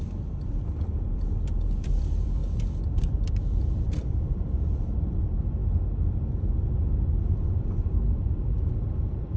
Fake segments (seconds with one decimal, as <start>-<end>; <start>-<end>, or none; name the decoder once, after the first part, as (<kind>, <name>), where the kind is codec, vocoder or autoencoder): 0.0-5.6 (vocoder, BigVGAN v2); 6.4-9.4